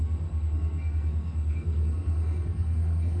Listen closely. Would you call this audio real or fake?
fake